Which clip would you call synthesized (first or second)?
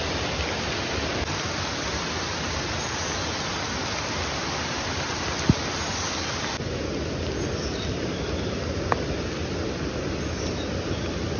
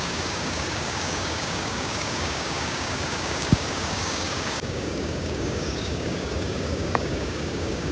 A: second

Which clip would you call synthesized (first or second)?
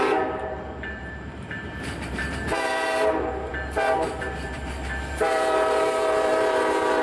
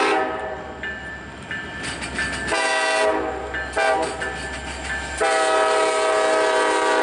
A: first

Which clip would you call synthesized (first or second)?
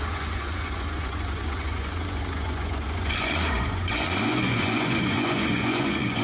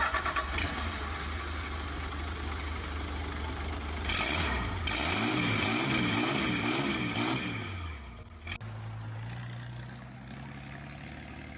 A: first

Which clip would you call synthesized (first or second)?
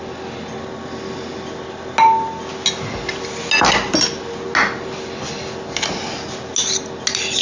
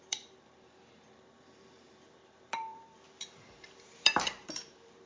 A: second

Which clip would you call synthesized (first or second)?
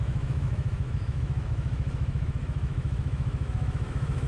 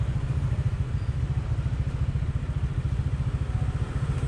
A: first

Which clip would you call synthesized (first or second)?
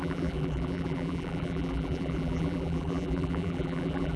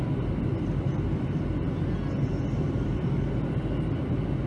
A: first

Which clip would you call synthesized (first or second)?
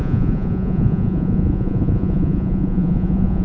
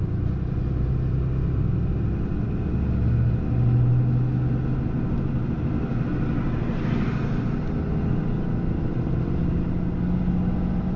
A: first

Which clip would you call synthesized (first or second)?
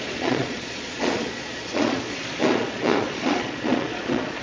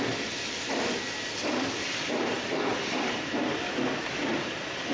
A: first